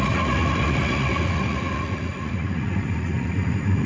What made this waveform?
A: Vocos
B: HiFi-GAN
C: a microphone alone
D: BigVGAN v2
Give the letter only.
A